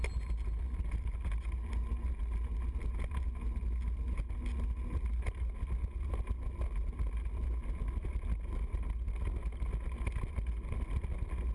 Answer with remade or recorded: recorded